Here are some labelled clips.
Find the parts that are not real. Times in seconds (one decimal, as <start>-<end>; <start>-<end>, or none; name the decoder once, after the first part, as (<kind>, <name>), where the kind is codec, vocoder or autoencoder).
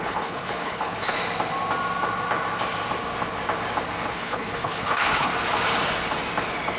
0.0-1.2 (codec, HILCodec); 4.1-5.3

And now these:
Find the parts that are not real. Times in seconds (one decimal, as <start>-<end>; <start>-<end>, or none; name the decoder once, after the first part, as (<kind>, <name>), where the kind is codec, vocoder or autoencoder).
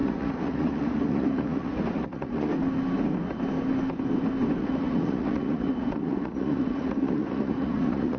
0.0-2.5 (vocoder, Vocos); 4.6-8.2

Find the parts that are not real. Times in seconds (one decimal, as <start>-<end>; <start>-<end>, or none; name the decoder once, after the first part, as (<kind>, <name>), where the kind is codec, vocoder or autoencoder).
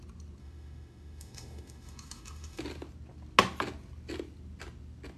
0.4-2.6 (autoencoder, DAC-VAE)